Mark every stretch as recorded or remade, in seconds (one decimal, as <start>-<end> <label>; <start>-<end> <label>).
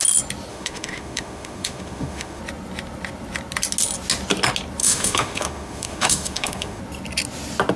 0.0-0.5 recorded; 0.5-2.4 remade; 2.4-4.8 recorded; 4.8-6.8 remade; 6.8-7.8 recorded